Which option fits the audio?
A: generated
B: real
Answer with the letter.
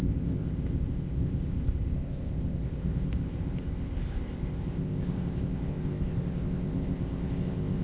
A